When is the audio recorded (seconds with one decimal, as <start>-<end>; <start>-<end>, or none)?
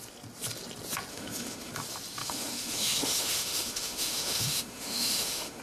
0.0-1.1; 1.7-2.2